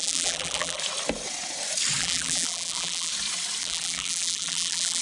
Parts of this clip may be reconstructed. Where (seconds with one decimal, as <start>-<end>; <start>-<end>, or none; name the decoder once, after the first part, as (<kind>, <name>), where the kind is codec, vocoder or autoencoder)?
0.0-0.8 (vocoder, BigVGAN v2); 2.0-3.1; 3.6-5.0